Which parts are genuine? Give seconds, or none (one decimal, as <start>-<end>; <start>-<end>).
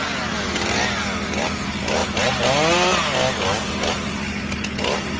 0.0-5.2